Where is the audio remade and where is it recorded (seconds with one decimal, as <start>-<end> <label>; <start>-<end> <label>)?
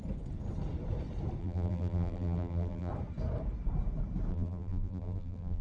0.0-1.4 recorded; 1.4-2.9 remade; 2.9-4.3 recorded; 4.3-5.6 remade